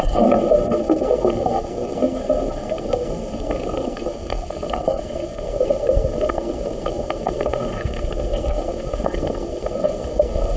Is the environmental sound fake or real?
fake